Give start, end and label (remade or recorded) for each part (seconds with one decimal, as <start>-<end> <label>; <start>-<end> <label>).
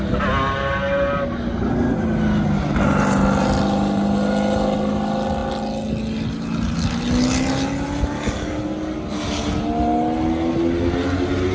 0.0-11.5 recorded